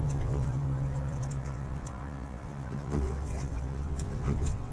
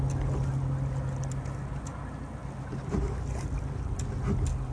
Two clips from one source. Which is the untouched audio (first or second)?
second